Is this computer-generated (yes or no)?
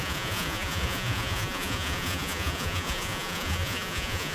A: yes